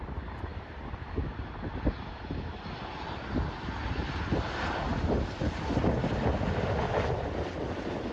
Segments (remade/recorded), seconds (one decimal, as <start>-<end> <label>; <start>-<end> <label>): 0.0-8.1 recorded